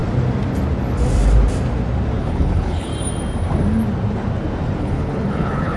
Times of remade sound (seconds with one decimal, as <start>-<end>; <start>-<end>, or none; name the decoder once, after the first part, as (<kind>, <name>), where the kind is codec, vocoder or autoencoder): 2.2-2.9 (codec, HILCodec); 4.8-5.8